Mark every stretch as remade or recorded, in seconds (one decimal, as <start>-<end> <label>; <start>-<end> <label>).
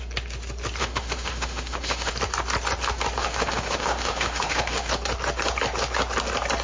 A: 0.0-0.8 recorded; 0.8-2.1 remade; 2.1-3.2 recorded; 3.2-4.9 remade; 4.9-6.6 recorded